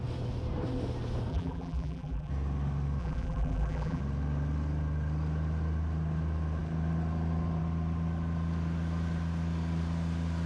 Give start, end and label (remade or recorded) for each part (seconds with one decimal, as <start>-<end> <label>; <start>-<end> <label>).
0.0-1.3 recorded; 1.3-2.3 remade; 2.3-3.0 recorded; 3.0-4.0 remade; 4.0-10.5 recorded